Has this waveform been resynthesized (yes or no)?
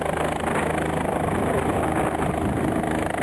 no